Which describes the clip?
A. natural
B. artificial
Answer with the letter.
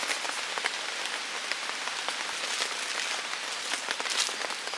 A